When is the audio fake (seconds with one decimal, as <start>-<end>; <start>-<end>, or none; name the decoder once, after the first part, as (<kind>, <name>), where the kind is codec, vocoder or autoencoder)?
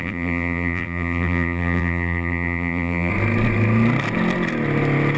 0.0-3.1 (vocoder, BigVGAN v2)